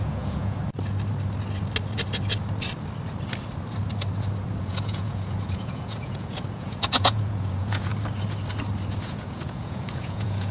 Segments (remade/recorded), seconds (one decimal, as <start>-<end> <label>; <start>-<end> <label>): 0.0-0.6 remade; 0.6-4.6 recorded; 4.6-7.9 remade; 7.9-9.0 recorded; 9.0-10.5 remade